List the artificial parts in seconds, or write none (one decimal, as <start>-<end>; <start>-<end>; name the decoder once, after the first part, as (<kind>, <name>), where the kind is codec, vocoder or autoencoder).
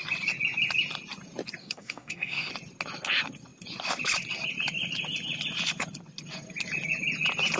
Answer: 1.6-2.5 (codec, SNAC)